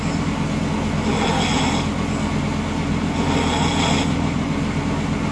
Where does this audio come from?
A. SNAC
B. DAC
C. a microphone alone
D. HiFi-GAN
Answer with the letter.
C